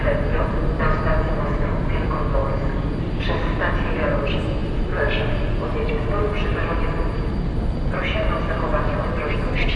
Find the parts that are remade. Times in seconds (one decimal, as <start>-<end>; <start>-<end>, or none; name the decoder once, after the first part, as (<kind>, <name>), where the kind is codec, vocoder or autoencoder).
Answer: none